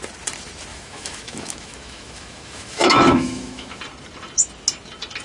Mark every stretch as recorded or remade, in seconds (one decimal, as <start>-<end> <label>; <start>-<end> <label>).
0.0-0.7 recorded; 0.7-3.8 remade; 3.8-5.2 recorded